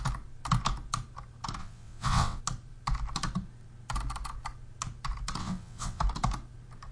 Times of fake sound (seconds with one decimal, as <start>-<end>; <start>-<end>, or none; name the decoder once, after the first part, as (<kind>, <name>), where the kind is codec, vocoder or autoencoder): 1.6-2.4 (vocoder, WaveNeXt); 5.4-6.0